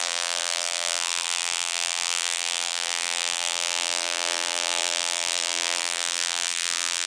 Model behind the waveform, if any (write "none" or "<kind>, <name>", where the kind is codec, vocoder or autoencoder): vocoder, BigVGAN v2